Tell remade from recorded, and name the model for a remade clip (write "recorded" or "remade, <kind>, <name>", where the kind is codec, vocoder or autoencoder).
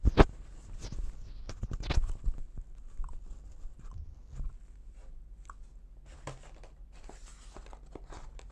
recorded